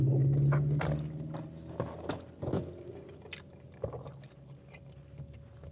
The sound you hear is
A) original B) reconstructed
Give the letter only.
A